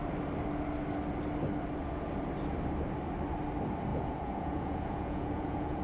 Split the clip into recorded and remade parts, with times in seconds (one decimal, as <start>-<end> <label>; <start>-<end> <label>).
0.0-3.9 recorded; 3.9-5.8 remade